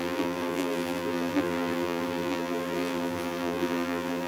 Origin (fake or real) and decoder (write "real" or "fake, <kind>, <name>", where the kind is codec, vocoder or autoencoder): fake, vocoder, BigVGAN v2